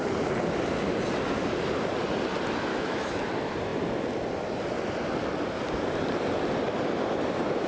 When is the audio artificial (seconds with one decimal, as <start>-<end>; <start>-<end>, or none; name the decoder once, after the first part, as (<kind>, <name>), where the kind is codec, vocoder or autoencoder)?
2.7-3.2 (autoencoder, DAC-VAE)